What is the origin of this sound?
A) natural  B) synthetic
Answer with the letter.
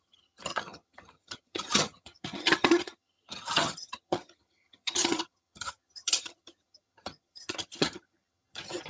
B